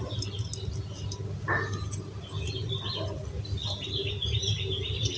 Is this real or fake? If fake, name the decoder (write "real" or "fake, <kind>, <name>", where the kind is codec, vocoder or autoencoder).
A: real